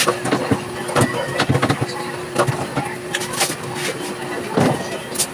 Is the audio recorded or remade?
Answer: recorded